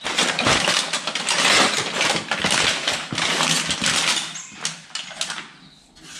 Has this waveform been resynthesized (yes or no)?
no